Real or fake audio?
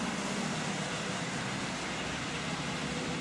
real